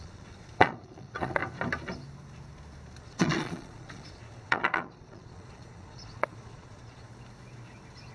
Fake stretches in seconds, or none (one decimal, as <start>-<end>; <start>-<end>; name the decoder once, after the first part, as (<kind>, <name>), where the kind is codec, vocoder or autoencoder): 0.0-1.4 (vocoder, Vocos); 3.0-7.1